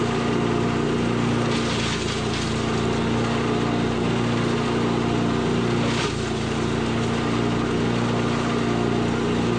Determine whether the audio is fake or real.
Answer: real